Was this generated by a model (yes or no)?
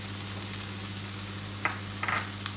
no